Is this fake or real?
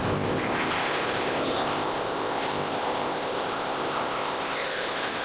fake